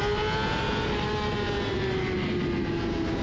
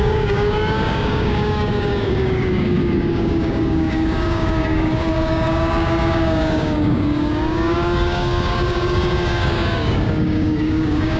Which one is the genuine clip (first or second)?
first